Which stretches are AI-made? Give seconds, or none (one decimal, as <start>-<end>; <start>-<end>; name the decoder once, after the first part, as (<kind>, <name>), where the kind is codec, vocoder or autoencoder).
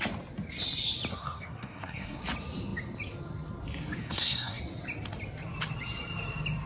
1.1-2.2 (codec, SNAC); 4.0-4.6